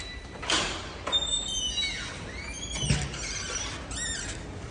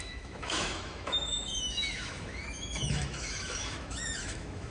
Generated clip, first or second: second